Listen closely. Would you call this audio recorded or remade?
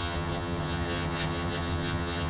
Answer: remade